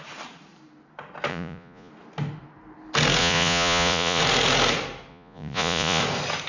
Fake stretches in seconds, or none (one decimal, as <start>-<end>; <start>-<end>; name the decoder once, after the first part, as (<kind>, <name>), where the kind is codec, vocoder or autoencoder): 1.3-1.9 (vocoder, Vocos); 3.2-4.2; 5.1-6.0

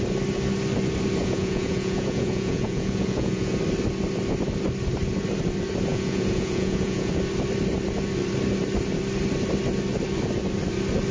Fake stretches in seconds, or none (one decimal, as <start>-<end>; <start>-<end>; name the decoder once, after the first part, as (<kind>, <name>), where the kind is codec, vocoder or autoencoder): 1.2-3.6 (vocoder, Vocos); 5.9-7.1

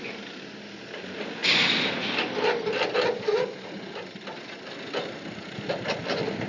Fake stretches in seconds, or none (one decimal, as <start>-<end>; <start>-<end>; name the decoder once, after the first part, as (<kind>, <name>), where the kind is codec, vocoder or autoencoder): none

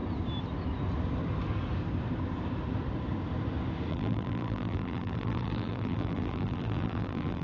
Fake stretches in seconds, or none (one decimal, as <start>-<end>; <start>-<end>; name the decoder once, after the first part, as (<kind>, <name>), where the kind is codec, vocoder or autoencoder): 3.9-7.4 (vocoder, BigVGAN v2)

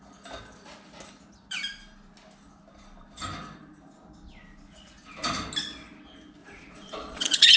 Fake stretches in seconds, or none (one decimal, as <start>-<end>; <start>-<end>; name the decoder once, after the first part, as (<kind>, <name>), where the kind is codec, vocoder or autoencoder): 6.4-7.6 (vocoder, Vocos)

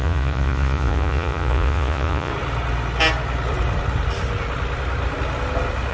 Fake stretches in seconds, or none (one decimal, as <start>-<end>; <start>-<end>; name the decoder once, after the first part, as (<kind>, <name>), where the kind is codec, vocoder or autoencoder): 0.0-2.3 (vocoder, Vocos)

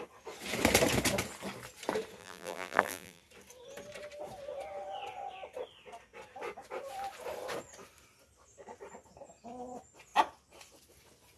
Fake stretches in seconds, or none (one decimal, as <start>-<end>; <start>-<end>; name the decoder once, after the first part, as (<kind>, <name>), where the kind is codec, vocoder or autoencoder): 2.2-3.2 (vocoder, BigVGAN v2)

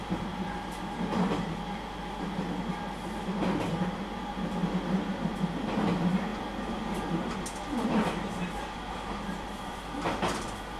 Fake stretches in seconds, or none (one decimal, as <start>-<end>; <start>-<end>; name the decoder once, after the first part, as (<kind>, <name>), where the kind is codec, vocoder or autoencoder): none